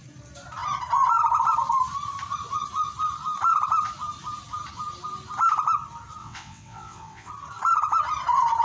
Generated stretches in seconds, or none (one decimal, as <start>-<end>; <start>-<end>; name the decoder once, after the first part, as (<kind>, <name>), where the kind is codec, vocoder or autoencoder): 6.2-7.3 (vocoder, WaveNeXt)